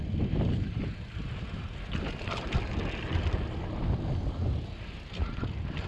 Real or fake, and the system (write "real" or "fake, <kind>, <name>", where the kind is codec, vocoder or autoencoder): real